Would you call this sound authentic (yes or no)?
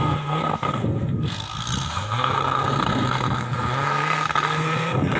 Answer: no